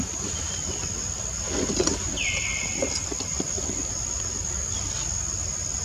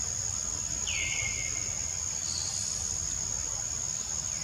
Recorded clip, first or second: second